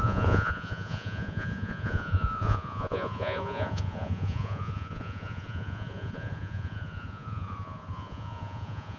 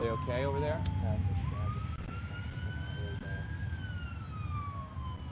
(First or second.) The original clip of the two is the second